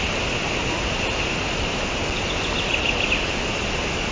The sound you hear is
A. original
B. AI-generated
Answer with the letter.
A